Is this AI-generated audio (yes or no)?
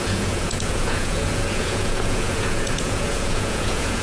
yes